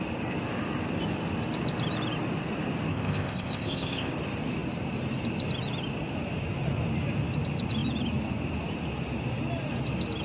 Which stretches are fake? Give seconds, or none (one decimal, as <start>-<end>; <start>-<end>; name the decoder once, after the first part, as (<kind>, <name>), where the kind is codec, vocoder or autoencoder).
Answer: 2.9-4.1 (codec, ZipCodec)